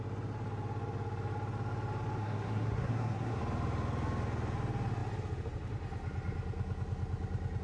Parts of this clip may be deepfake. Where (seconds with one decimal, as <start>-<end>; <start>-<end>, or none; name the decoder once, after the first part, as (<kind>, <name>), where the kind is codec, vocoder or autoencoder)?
2.2-3.4 (codec, SNAC)